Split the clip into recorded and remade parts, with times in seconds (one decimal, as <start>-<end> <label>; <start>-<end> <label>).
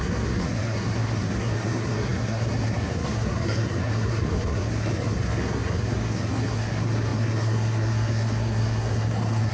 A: 0.0-9.5 remade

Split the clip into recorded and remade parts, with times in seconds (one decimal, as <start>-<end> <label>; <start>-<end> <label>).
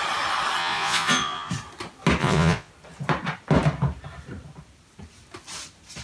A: 0.0-0.6 recorded; 0.6-1.5 remade; 1.5-2.2 recorded; 2.2-2.7 remade; 2.7-6.0 recorded